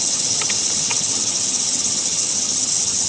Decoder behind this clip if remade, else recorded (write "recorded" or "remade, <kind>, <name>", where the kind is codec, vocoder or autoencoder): remade, vocoder, HiFi-GAN